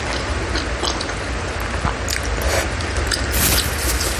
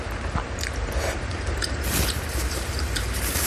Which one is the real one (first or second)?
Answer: first